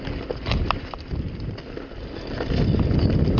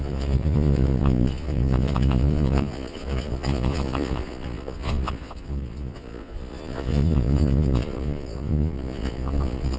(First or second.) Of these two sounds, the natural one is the first